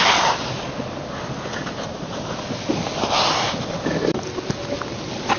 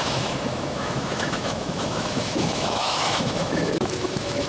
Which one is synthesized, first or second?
second